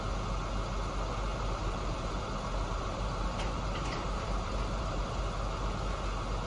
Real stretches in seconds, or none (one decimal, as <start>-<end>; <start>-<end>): 0.0-1.3; 5.2-6.5